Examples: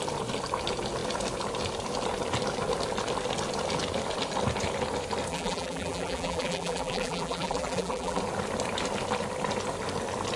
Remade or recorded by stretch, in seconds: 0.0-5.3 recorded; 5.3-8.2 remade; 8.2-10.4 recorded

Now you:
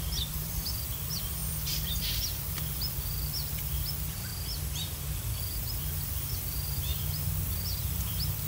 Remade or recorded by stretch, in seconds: 0.0-4.3 remade; 4.3-5.5 recorded; 5.5-8.5 remade

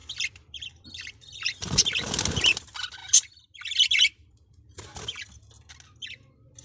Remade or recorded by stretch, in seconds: 0.0-1.8 remade; 1.8-3.0 recorded; 3.0-5.0 remade; 5.0-6.6 recorded

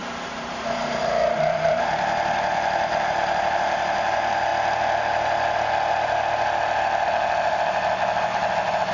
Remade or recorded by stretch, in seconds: 0.0-4.5 remade; 4.5-8.9 recorded

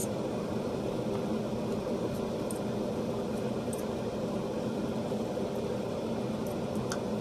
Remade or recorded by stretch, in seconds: 0.0-0.5 remade; 0.5-7.2 recorded

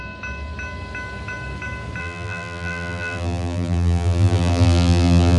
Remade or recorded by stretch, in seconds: 0.0-2.0 recorded; 2.0-5.4 remade